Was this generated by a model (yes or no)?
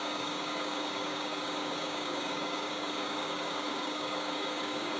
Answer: yes